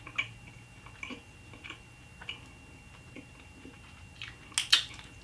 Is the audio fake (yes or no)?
no